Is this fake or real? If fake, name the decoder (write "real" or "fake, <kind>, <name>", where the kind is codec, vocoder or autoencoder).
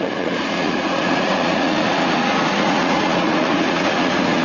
fake, vocoder, Vocos